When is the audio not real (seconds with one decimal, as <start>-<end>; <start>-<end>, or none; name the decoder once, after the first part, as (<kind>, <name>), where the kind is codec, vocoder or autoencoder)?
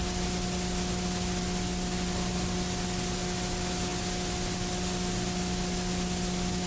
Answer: none